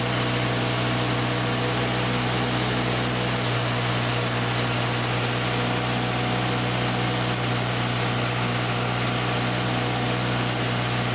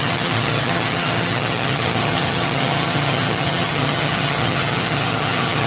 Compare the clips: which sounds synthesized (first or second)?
second